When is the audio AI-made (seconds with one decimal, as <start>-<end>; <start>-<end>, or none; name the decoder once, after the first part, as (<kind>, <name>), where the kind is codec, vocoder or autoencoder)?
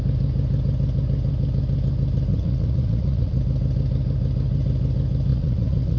2.3-3.4 (vocoder, Vocos); 5.3-6.0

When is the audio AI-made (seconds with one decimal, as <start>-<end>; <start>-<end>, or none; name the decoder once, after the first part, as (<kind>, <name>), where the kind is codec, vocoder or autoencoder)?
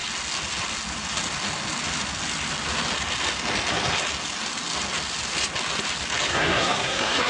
6.3-7.3 (codec, SNAC)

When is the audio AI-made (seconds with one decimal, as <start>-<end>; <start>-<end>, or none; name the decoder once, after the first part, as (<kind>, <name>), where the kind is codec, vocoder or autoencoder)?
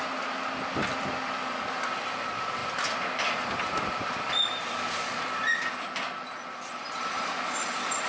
none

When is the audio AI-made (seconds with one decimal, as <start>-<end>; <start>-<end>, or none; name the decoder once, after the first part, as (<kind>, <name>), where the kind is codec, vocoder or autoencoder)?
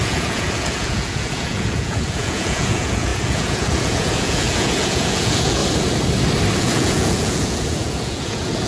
0.0-5.6 (vocoder, Vocos); 6.6-8.7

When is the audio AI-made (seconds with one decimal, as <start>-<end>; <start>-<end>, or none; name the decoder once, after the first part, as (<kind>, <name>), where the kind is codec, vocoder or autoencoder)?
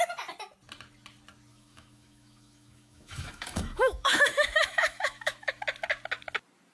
1.5-5.5 (autoencoder, DAC-VAE)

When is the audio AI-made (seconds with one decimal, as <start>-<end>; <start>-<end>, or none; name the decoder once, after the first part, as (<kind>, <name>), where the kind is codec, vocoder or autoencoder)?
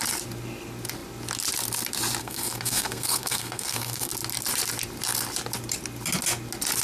2.2-4.1 (codec, SNAC)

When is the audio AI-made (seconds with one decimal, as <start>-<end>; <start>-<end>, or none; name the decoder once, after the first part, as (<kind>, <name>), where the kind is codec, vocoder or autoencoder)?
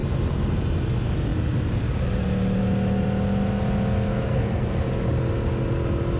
4.1-4.8 (codec, SNAC)